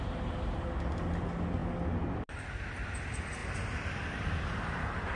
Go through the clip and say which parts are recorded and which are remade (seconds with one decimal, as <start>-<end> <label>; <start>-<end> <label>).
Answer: 0.0-3.4 recorded; 3.4-5.2 remade